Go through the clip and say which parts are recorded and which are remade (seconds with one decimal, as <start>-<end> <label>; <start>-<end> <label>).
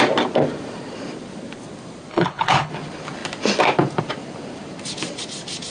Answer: 0.0-2.1 recorded; 2.1-2.7 remade; 2.7-5.7 recorded